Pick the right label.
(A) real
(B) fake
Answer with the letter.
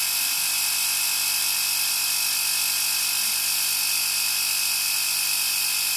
A